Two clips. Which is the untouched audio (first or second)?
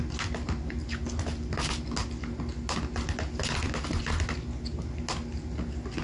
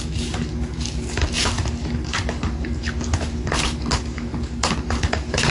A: first